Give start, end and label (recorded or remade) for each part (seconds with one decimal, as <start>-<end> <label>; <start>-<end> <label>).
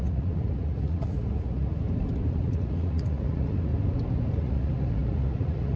0.0-1.7 remade; 1.7-2.3 recorded; 2.3-3.7 remade; 3.7-4.3 recorded; 4.3-5.8 remade